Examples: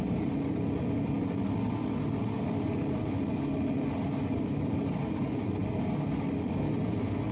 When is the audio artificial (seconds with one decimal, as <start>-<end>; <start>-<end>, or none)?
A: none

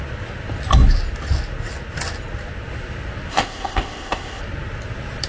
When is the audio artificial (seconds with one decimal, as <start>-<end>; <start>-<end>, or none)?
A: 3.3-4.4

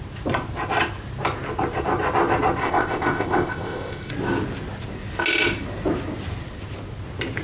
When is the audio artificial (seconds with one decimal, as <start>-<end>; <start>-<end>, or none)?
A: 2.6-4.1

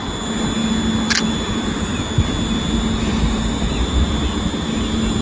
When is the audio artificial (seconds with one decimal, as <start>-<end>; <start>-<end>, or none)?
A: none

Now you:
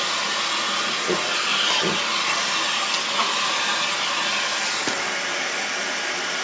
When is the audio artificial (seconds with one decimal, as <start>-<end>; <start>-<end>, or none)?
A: none